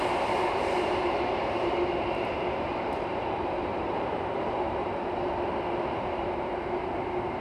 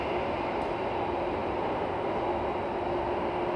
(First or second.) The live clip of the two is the second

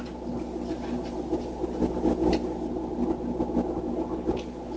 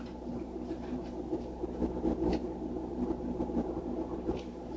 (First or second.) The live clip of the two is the first